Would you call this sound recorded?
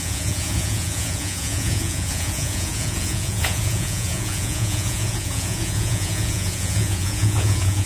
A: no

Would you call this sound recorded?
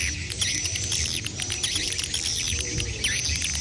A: yes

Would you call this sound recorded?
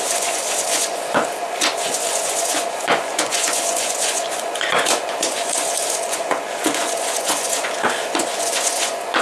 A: no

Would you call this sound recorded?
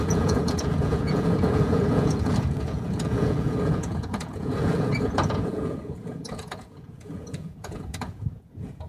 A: no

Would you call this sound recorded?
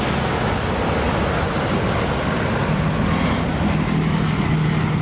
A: yes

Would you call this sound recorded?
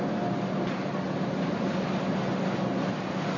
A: yes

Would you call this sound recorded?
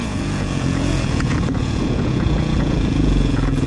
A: no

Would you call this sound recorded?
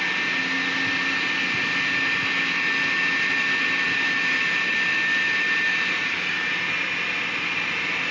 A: yes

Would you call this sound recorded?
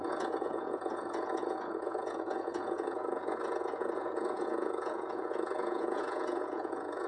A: no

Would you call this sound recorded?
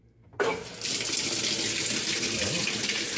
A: yes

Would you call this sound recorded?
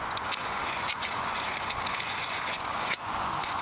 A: no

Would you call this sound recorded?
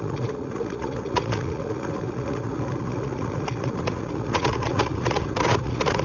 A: no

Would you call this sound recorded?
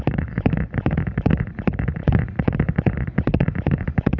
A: no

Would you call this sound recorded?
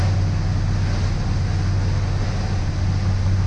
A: yes